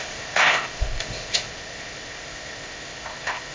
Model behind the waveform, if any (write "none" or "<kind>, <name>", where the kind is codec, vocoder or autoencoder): codec, ZipCodec